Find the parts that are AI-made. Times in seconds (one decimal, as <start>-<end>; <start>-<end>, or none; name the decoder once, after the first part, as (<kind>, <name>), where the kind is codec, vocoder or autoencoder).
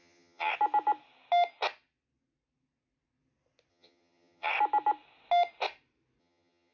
0.0-0.5 (vocoder, HiFi-GAN); 3.7-4.5; 6.2-6.7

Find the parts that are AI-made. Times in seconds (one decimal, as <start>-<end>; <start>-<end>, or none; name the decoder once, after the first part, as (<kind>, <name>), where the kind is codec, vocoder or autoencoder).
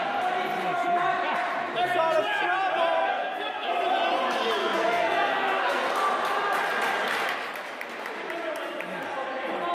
3.0-3.7 (codec, SNAC); 4.6-5.9